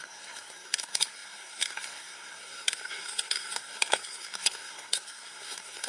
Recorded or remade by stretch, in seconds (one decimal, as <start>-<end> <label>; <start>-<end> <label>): 0.0-5.9 remade